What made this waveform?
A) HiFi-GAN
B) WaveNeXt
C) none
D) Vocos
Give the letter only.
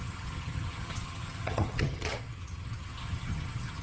A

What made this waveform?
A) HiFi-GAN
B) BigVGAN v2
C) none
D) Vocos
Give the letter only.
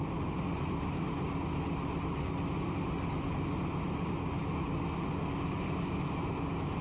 C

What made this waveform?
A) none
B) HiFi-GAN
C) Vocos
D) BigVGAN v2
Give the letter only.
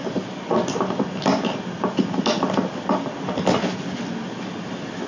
A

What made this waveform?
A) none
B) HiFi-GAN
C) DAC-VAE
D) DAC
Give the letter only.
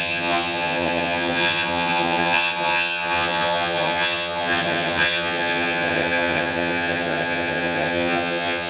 B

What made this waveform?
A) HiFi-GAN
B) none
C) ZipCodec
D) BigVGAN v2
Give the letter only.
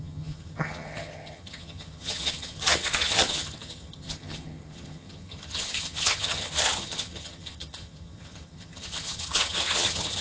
A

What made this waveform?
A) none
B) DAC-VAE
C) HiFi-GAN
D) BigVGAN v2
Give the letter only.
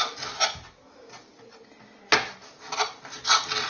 A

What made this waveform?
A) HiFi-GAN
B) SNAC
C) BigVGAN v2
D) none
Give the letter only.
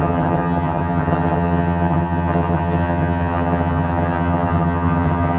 A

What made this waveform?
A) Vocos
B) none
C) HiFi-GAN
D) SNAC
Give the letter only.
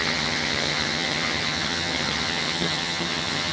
C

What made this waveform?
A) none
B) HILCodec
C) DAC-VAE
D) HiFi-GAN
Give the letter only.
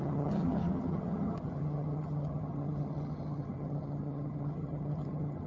D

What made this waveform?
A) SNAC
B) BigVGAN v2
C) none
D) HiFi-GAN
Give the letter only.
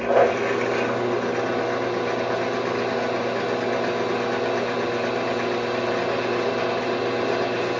C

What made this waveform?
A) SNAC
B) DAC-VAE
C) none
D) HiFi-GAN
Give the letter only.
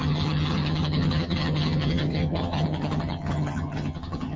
D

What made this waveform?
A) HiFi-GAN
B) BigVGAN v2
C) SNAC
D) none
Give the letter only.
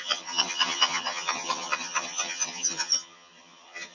A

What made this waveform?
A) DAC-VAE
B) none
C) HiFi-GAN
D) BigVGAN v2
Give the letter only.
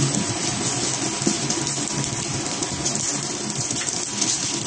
B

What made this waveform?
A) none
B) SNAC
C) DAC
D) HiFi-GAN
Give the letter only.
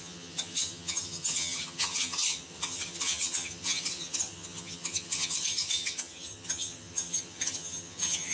D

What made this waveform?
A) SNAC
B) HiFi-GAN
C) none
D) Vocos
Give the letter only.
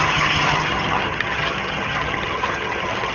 B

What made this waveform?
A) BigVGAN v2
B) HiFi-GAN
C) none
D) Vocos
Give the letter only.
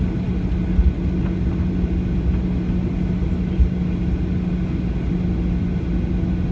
C